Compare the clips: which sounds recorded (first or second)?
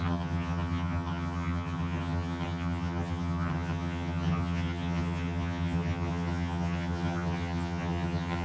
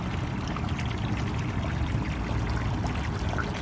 second